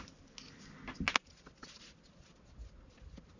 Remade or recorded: recorded